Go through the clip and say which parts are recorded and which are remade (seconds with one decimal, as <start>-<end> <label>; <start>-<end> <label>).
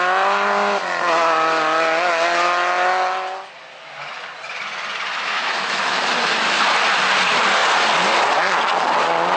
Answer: 0.0-5.1 recorded; 5.1-6.6 remade; 6.6-9.4 recorded